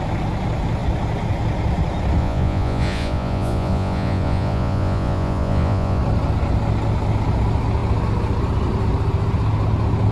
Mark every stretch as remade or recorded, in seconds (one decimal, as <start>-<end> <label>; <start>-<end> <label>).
0.0-2.2 recorded; 2.2-6.0 remade; 6.0-10.1 recorded